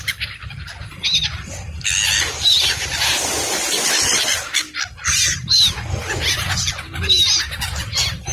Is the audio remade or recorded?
recorded